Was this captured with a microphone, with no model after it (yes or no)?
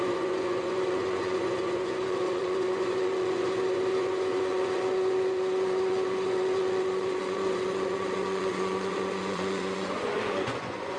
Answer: no